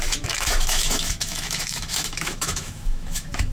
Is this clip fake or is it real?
fake